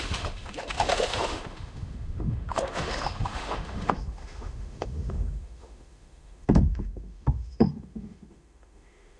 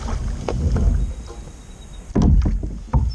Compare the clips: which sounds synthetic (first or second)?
first